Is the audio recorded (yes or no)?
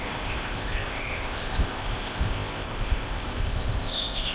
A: no